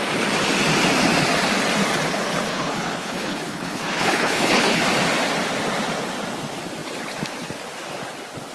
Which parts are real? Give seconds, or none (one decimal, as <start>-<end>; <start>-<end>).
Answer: 0.0-2.5; 4.8-8.5